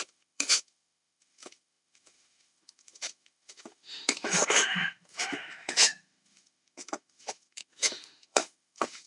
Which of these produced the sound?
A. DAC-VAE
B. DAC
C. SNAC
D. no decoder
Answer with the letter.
A